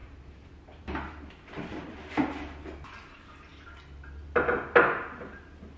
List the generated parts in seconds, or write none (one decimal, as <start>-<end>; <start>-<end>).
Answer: 0.0-1.1